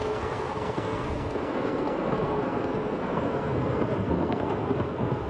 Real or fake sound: fake